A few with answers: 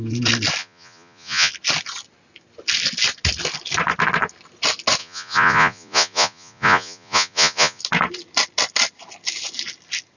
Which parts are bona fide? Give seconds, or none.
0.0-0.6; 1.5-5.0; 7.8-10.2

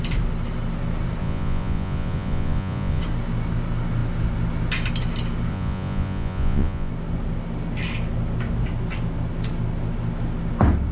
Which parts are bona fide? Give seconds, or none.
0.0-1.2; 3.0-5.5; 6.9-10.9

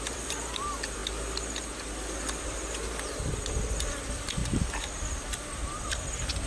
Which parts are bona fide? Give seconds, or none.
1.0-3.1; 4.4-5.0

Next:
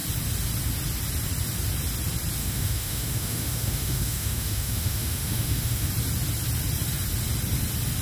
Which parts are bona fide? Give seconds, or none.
0.0-2.4; 5.9-8.0

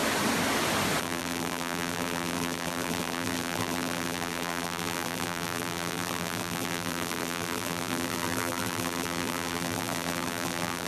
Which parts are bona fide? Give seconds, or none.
0.0-1.0

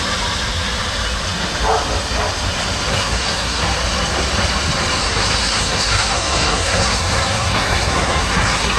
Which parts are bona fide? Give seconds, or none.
0.0-2.9; 3.6-5.0

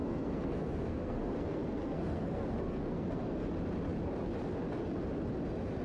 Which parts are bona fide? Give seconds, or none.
3.5-5.8

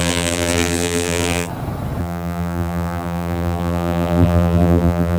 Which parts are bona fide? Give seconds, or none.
1.5-2.0